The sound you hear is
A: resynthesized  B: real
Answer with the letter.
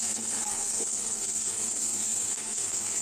A